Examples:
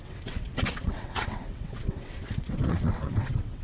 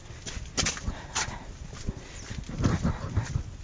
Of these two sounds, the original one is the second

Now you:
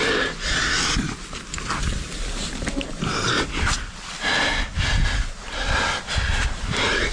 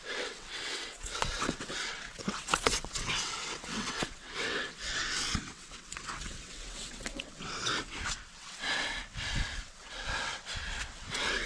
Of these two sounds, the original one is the first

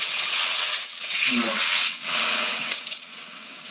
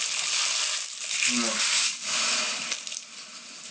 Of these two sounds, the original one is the second